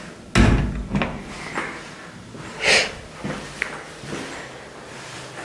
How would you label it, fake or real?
real